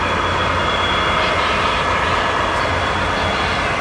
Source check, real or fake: real